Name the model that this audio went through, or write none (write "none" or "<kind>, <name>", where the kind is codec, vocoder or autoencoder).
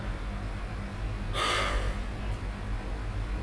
none